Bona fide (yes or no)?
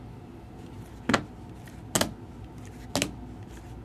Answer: yes